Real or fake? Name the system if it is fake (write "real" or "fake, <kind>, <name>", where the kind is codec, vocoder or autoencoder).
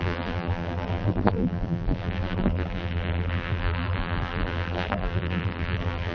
fake, vocoder, BigVGAN v2